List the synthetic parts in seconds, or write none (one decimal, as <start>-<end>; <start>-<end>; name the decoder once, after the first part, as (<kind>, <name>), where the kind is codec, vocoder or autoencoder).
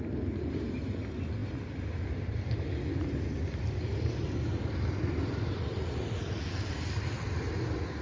none